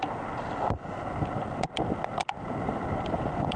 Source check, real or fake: real